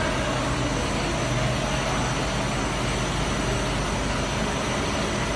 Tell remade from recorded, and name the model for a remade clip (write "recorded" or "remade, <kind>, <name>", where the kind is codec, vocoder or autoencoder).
recorded